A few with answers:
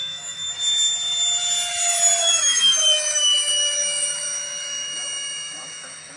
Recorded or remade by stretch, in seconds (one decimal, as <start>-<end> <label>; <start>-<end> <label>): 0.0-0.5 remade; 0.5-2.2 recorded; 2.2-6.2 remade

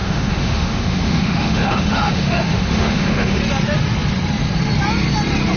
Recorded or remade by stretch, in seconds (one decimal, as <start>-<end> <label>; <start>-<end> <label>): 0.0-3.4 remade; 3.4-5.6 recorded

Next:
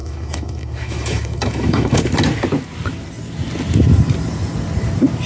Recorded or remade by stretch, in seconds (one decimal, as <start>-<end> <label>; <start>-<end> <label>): 0.0-2.0 remade; 2.0-5.3 recorded

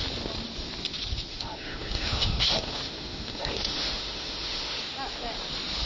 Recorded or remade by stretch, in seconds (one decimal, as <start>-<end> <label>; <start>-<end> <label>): 0.0-1.3 recorded; 1.3-4.8 remade; 4.8-5.9 recorded

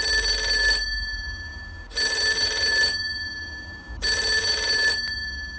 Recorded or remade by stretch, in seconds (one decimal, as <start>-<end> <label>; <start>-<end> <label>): 0.0-5.6 recorded